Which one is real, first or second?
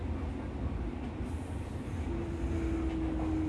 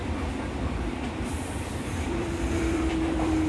first